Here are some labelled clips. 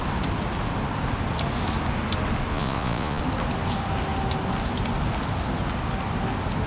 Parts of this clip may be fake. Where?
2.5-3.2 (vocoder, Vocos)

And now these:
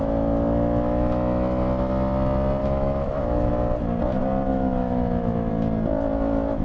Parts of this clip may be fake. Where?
2.6-3.5 (autoencoder, DAC-VAE); 4.5-5.5

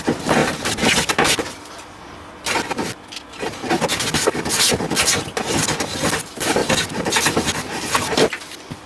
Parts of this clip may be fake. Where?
none

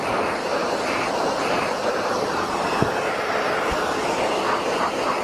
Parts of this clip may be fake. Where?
0.6-3.7 (vocoder, BigVGAN v2)

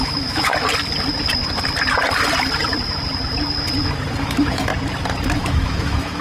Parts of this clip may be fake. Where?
0.0-0.5 (autoencoder, DAC-VAE); 4.2-4.7; 5.4-6.2